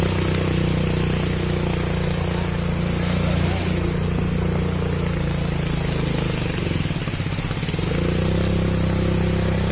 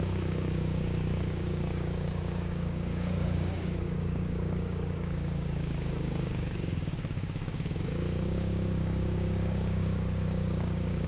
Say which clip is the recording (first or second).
first